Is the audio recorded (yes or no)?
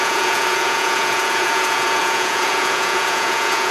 no